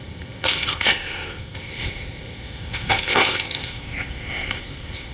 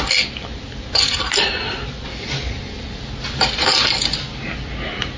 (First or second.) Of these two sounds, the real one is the second